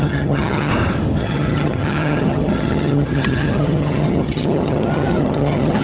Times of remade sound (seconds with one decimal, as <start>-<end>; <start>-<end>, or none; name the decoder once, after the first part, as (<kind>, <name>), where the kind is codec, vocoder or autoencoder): 0.0-0.7 (vocoder, HiFi-GAN); 1.2-5.8